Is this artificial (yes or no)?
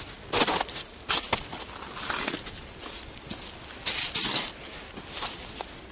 no